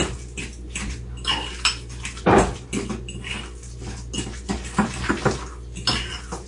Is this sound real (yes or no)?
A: yes